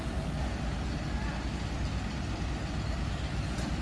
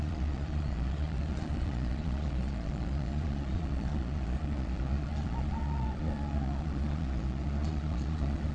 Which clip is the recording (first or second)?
first